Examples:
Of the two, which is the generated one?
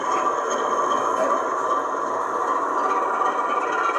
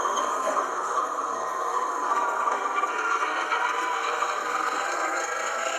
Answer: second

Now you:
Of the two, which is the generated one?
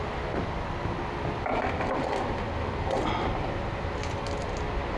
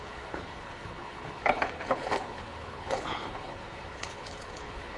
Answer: second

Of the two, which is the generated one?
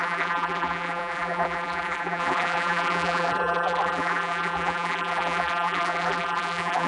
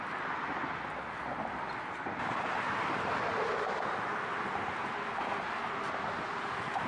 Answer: first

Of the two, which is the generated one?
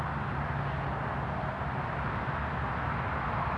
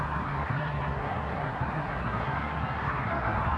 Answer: second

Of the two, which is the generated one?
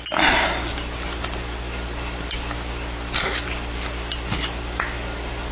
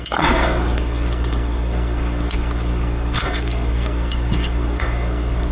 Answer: second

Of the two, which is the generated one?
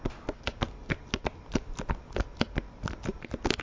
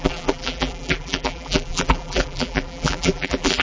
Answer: second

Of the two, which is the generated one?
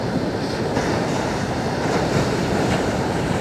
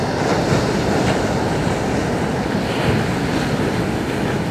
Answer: first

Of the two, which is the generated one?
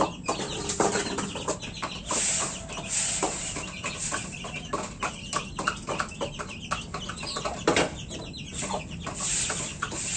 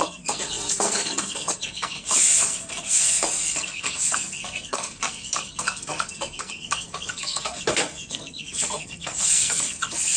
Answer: second